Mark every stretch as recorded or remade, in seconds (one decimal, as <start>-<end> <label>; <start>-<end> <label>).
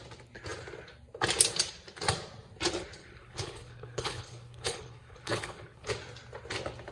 0.0-3.0 recorded; 3.0-5.9 remade; 5.9-6.9 recorded